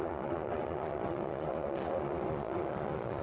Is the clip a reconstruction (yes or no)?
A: yes